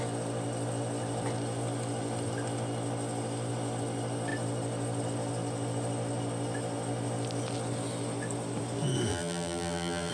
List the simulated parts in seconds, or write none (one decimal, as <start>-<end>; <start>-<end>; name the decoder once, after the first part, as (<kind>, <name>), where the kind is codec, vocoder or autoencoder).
9.1-10.1 (vocoder, BigVGAN v2)